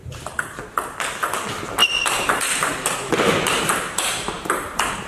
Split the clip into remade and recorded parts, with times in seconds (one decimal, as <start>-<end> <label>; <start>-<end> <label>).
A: 0.0-1.8 recorded; 1.8-5.1 remade